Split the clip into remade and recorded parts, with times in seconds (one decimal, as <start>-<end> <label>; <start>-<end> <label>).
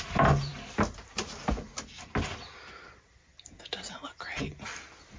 0.0-5.2 recorded